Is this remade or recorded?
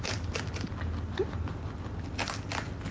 recorded